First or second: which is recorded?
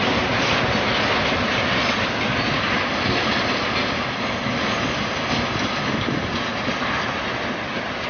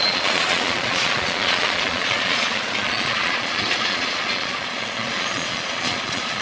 first